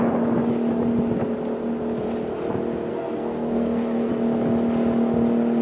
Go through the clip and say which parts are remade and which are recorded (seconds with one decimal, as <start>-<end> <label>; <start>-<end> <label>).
0.0-2.9 recorded; 2.9-4.1 remade; 4.1-5.6 recorded